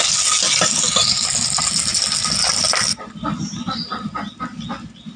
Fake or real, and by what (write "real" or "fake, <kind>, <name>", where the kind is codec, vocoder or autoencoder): real